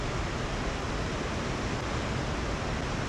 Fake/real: real